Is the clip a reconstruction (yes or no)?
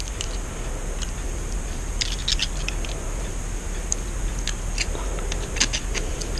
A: no